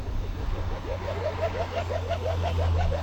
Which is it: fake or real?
fake